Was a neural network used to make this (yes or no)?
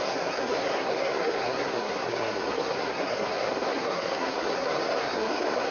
yes